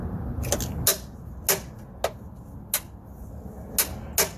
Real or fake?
real